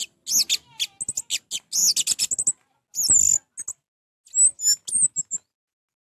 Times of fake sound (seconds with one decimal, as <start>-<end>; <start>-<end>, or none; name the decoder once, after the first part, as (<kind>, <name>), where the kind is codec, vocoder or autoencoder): none